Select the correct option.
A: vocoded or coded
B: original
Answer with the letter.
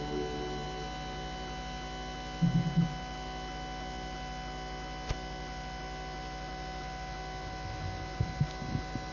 B